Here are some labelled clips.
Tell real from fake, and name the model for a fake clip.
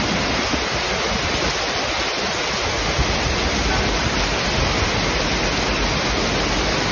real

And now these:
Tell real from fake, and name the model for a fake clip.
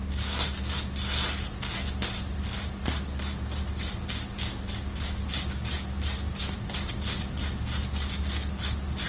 real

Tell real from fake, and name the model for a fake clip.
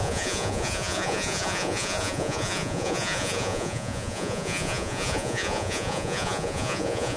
fake, vocoder, Vocos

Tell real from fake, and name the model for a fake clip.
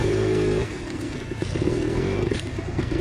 fake, codec, SNAC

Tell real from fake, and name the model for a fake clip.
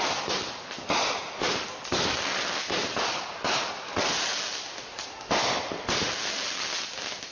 real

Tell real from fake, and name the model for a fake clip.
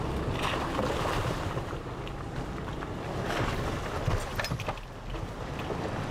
real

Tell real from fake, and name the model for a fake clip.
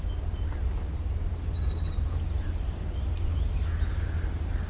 real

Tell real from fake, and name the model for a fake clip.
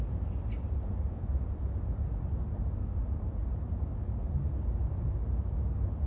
real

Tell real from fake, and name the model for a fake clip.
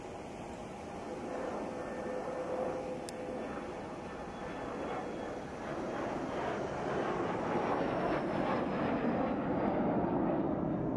real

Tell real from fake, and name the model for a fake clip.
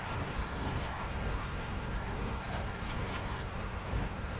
fake, codec, SNAC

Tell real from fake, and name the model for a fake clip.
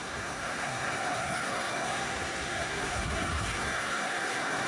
fake, codec, SNAC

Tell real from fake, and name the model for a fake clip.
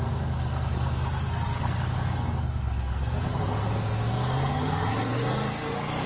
fake, codec, SNAC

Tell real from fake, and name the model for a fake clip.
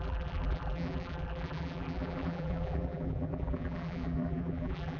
fake, vocoder, BigVGAN v2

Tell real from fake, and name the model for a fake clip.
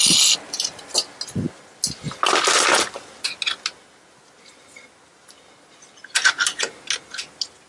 real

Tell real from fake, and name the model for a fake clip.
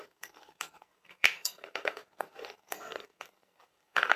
fake, codec, SNAC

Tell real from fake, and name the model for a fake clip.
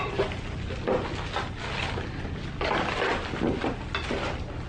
real